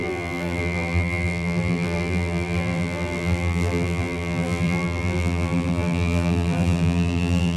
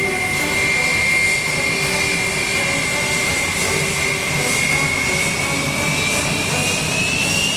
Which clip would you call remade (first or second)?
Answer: first